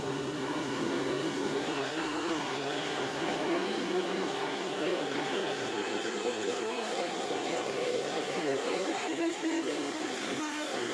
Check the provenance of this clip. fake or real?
fake